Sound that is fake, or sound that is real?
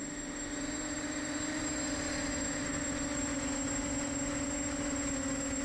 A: real